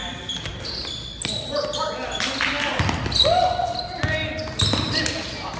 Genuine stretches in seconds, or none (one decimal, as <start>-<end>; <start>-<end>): 0.0-3.4